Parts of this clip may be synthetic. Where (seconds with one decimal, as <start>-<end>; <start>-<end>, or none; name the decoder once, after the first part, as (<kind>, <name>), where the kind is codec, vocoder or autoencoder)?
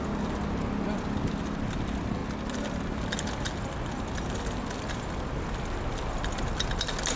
none